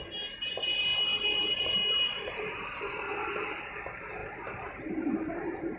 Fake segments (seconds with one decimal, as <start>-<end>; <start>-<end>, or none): none